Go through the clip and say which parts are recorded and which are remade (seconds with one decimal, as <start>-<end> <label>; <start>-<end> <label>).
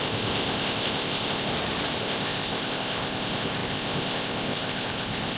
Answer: 0.0-1.5 remade; 1.5-2.0 recorded; 2.0-5.4 remade